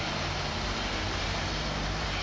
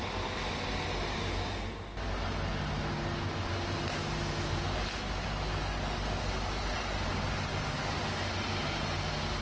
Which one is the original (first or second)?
second